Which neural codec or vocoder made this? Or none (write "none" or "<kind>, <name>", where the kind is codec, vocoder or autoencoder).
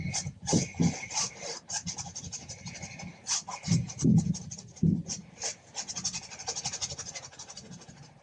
none